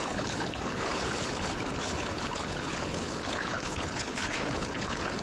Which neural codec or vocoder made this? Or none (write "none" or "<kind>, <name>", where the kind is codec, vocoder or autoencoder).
codec, HILCodec